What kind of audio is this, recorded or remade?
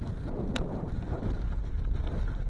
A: recorded